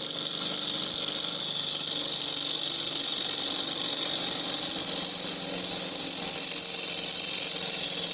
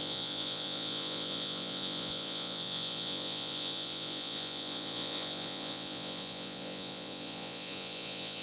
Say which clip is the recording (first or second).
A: first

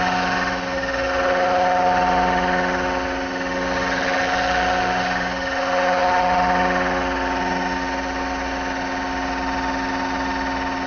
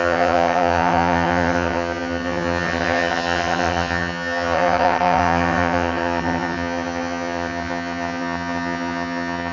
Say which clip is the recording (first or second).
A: first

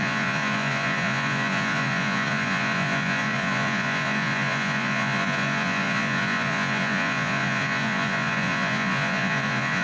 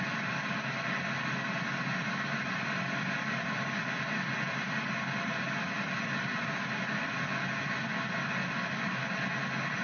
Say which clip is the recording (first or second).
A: second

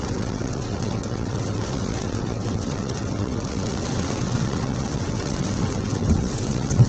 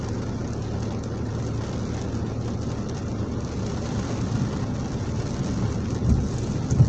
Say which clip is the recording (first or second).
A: second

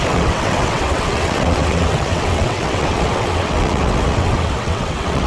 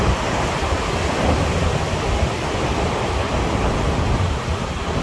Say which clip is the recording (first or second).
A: second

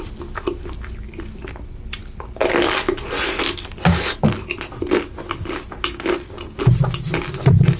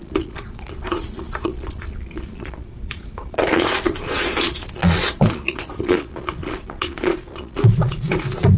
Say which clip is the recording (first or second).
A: first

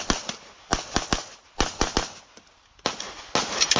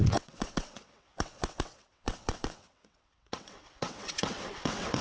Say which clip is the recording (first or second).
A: first